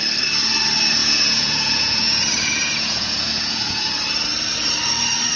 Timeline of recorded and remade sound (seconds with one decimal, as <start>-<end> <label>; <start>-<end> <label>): 0.0-1.0 recorded; 1.0-3.8 remade; 3.8-5.4 recorded